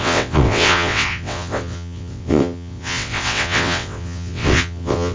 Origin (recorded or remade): remade